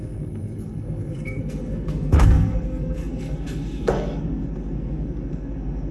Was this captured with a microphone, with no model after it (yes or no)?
no